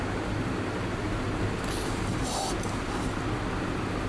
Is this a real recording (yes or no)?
yes